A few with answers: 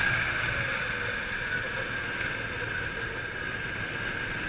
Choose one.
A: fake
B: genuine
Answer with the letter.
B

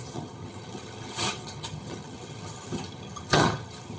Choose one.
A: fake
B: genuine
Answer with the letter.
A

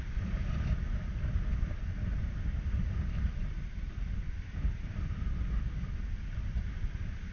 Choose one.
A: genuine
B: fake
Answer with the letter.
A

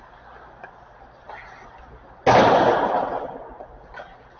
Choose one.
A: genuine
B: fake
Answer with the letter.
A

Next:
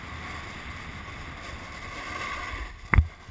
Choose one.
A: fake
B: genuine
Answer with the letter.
B